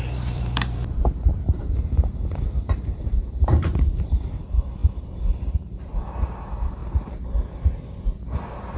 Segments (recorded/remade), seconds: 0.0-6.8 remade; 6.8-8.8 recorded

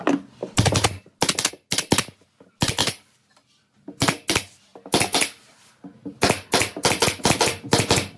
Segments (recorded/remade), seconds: 0.0-2.8 recorded; 2.8-3.5 remade; 3.5-8.2 recorded